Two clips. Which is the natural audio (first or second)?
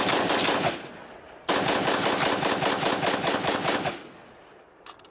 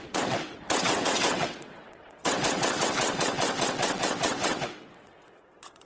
first